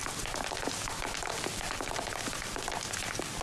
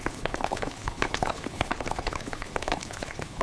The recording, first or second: first